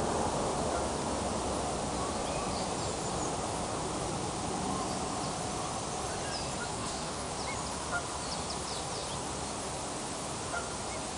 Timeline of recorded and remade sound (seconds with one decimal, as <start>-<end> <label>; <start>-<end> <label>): 0.0-6.7 recorded; 6.7-7.3 remade; 7.3-11.2 recorded